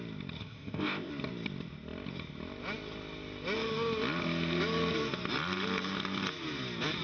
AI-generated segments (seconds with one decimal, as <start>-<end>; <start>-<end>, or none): 0.4-1.1